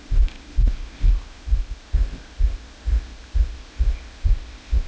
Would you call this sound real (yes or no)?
no